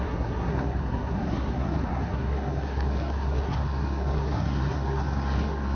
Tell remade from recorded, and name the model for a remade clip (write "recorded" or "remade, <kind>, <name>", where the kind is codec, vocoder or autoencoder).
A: remade, codec, SNAC